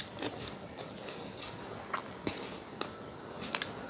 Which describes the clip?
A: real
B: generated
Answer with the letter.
A